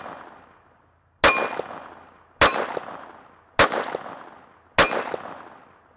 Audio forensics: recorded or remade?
recorded